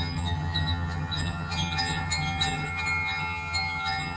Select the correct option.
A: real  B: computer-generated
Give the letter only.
B